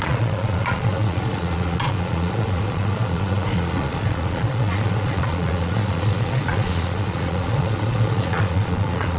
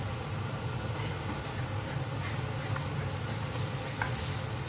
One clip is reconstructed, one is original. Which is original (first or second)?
second